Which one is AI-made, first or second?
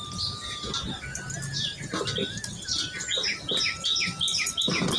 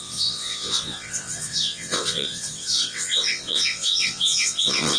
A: second